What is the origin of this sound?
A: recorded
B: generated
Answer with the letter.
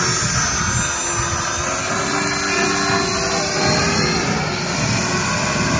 A